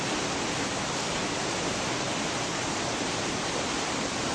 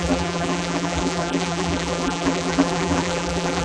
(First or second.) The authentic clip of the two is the first